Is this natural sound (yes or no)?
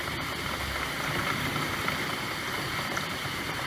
yes